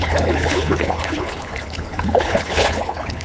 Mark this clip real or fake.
fake